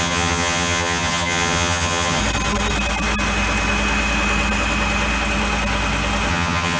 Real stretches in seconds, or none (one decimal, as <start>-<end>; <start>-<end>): 2.2-6.3